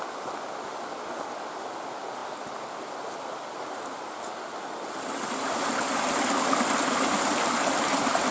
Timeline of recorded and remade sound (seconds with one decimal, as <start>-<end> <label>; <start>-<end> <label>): 0.0-8.3 recorded